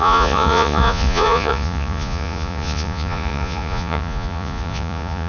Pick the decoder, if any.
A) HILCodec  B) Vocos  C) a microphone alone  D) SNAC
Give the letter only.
B